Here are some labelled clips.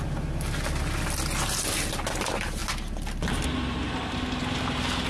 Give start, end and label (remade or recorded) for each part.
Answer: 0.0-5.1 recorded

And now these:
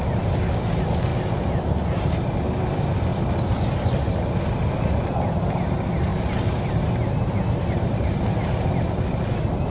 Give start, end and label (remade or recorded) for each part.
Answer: 0.0-9.7 recorded